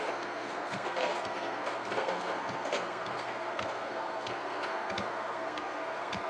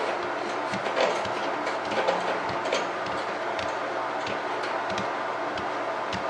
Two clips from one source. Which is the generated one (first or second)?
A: first